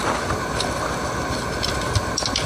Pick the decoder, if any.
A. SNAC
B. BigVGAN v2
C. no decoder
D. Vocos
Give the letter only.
C